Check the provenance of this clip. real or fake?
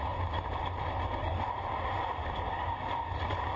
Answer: real